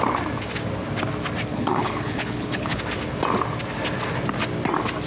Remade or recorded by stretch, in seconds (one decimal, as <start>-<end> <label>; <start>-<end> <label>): 0.0-1.5 recorded; 1.5-2.8 remade; 2.8-5.1 recorded